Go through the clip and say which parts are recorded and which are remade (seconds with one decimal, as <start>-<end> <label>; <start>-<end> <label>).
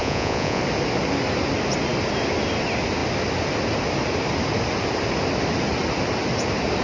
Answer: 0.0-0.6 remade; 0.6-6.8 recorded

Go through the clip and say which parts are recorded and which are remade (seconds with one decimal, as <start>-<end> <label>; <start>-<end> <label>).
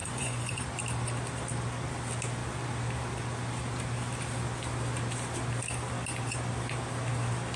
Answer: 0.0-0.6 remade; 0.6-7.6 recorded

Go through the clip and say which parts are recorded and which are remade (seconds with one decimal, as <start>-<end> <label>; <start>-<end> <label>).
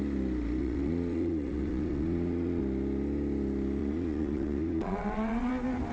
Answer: 0.0-0.6 recorded; 0.6-2.6 remade; 2.6-3.8 recorded; 3.8-5.5 remade; 5.5-5.9 recorded